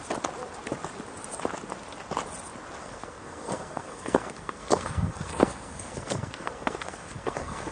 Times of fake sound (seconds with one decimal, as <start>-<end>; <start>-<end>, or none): 2.8-7.7